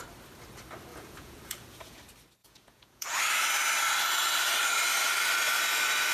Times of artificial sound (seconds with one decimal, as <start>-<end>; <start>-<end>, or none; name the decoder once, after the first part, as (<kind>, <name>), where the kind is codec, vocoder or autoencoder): 0.9-2.0 (vocoder, Vocos); 2.4-3.2